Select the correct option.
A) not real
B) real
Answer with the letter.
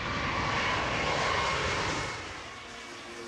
B